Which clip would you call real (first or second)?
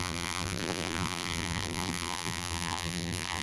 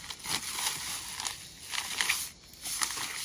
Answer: second